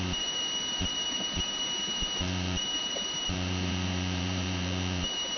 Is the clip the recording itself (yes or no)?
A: no